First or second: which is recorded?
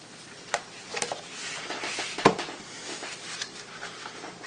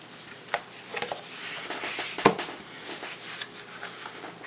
second